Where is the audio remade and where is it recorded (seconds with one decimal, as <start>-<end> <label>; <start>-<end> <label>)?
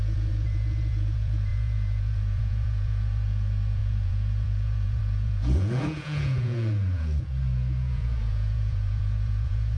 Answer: 0.0-9.8 remade